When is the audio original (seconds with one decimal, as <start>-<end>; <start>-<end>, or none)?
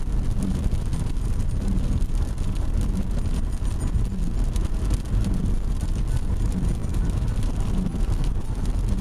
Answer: 0.0-9.0